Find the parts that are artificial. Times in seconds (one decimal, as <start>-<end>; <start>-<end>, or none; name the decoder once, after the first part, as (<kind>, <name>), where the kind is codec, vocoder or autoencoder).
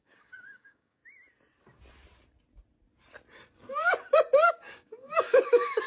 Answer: 0.0-1.0 (codec, DAC); 4.5-5.9